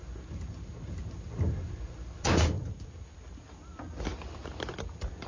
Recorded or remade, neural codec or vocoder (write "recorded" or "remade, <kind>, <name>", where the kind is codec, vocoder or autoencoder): recorded